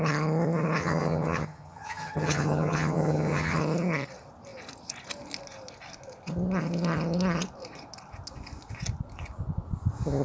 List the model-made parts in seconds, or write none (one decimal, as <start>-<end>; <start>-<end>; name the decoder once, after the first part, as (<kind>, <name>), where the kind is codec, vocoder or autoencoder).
0.8-3.6 (vocoder, HiFi-GAN)